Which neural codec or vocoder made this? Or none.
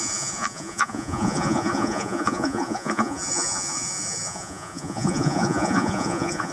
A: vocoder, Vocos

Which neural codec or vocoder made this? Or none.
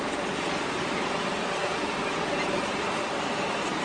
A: vocoder, BigVGAN v2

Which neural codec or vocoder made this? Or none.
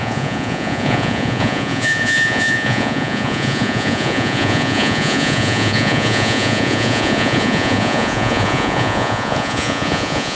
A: vocoder, Vocos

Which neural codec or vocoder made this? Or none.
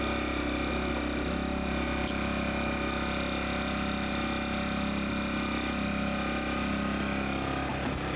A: none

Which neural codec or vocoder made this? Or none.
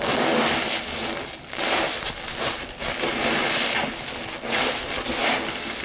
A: none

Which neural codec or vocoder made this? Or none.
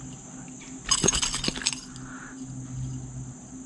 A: none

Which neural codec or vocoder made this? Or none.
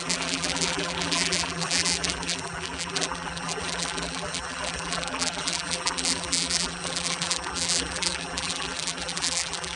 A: vocoder, BigVGAN v2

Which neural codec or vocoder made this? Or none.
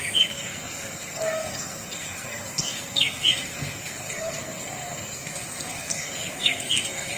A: codec, SNAC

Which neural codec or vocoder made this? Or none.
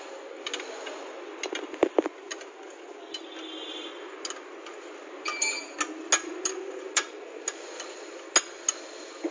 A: none